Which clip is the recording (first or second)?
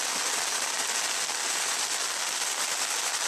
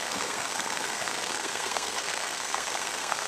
first